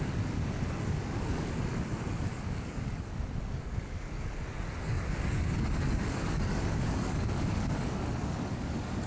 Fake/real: fake